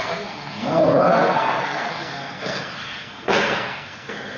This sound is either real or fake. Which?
fake